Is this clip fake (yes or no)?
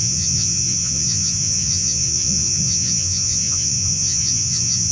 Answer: yes